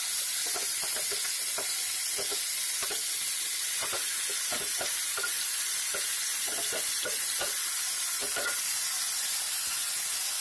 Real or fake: real